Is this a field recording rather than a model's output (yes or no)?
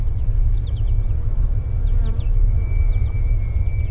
yes